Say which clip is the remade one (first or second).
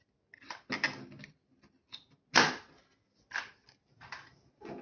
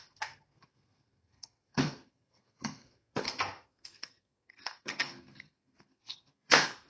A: second